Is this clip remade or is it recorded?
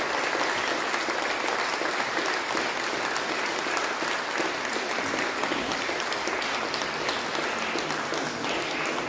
recorded